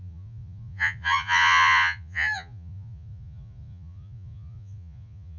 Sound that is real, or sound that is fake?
fake